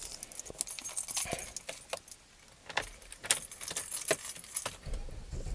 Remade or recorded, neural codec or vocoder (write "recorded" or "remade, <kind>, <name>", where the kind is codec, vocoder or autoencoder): recorded